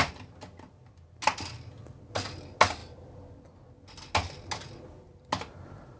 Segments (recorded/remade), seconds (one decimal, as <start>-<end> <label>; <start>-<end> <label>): 0.0-6.0 recorded